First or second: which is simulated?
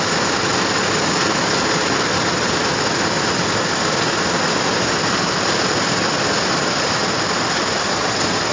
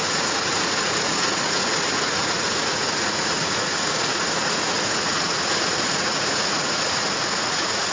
second